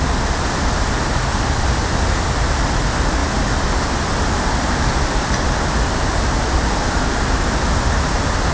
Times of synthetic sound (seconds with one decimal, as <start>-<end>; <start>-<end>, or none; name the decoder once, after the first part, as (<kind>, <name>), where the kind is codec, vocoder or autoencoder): none